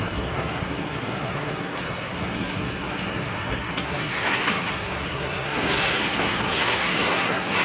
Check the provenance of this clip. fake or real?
fake